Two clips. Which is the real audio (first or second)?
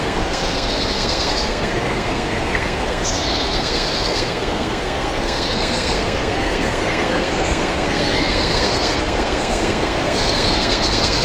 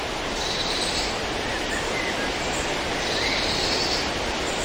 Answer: second